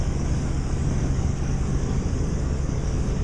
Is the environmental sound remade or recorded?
remade